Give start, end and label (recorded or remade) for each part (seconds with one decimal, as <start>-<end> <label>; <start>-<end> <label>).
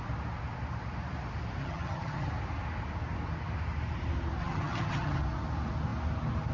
0.0-1.6 recorded; 1.6-2.3 remade; 2.3-4.4 recorded; 4.4-5.2 remade; 5.2-6.5 recorded